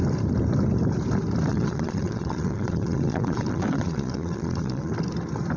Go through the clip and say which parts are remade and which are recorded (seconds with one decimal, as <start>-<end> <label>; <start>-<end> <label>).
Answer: 0.0-1.5 recorded; 1.5-4.9 remade; 4.9-5.6 recorded